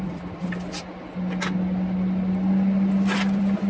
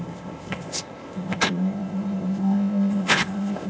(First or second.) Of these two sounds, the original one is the first